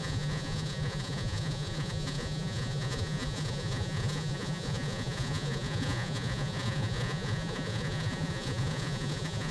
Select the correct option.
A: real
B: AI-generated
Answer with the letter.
B